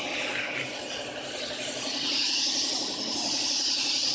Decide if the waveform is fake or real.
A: real